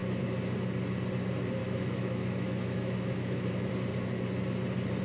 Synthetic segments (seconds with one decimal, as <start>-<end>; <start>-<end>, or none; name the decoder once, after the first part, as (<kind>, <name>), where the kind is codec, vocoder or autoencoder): 1.6-3.7 (autoencoder, DAC-VAE)